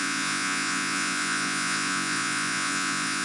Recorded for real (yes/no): no